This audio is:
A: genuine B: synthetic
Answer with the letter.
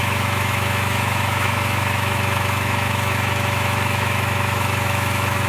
B